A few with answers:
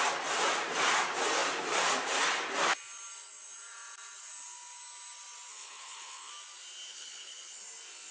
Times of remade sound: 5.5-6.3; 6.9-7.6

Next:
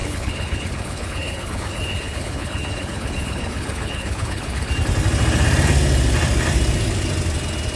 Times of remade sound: 0.0-4.7

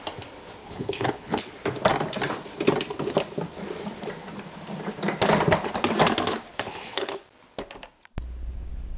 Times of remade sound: 0.6-1.5; 6.5-7.2

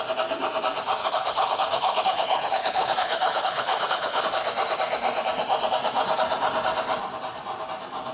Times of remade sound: 1.0-4.2

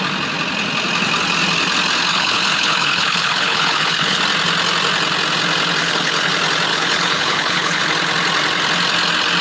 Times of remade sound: 2.1-4.2; 5.8-6.3; 6.7-7.8